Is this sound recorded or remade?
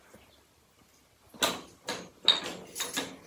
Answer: recorded